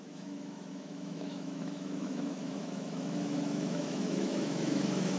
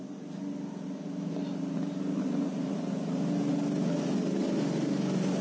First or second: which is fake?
first